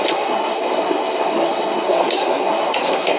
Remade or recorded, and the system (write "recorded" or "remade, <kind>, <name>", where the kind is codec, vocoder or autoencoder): remade, codec, SNAC